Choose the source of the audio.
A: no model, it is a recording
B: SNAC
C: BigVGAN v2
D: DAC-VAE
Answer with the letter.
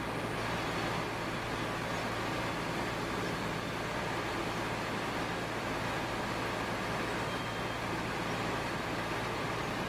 A